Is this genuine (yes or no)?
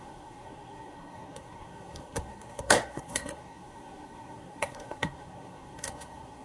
no